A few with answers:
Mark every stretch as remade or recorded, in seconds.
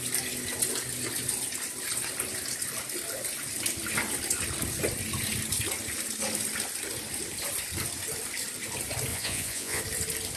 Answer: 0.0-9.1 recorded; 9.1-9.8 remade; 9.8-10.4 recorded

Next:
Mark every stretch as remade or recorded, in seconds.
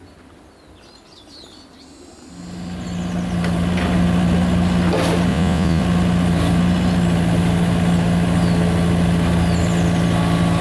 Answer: 0.0-5.3 recorded; 5.3-5.8 remade; 5.8-10.6 recorded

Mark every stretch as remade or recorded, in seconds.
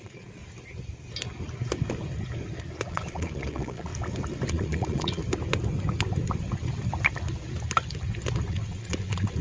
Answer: 0.0-0.4 remade; 0.4-2.9 recorded; 2.9-3.9 remade; 3.9-4.5 recorded; 4.5-5.2 remade; 5.2-8.5 recorded; 8.5-9.4 remade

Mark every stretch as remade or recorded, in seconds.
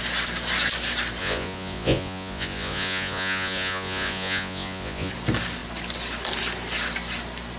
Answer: 0.0-1.2 recorded; 1.2-5.1 remade; 5.1-7.6 recorded